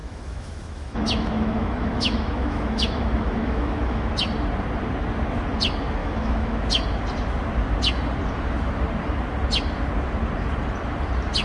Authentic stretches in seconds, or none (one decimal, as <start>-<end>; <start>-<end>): 4.1-6.0; 6.6-11.4